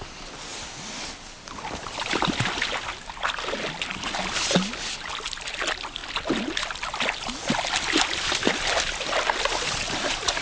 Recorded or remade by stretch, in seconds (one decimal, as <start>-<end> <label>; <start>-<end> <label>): 0.0-10.4 recorded